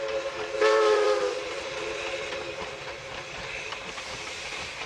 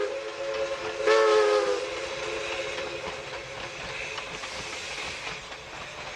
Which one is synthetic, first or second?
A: first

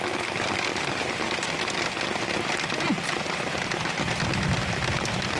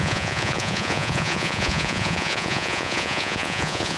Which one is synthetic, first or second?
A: second